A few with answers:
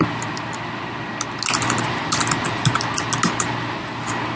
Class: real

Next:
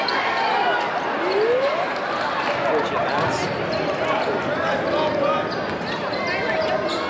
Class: real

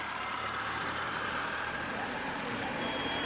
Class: fake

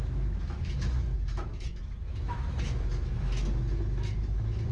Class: fake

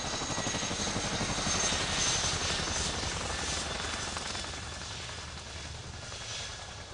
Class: real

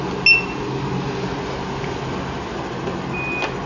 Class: real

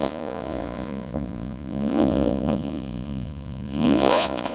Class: fake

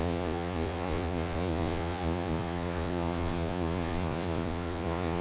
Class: fake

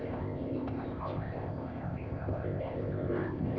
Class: fake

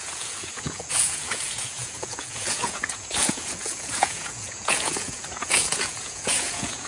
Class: fake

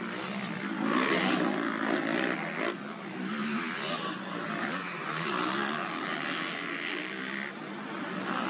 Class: real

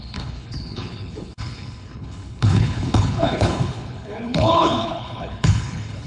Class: fake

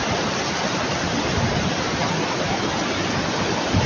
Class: real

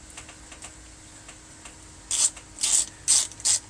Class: real